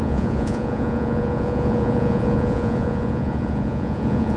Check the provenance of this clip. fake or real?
fake